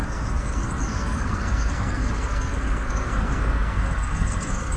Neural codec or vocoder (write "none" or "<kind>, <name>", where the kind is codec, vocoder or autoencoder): codec, SNAC